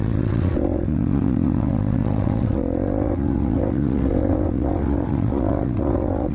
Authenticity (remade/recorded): remade